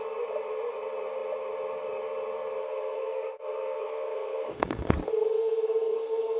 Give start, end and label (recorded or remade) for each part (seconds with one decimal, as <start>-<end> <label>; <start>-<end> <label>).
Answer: 0.0-2.6 recorded; 2.6-6.4 remade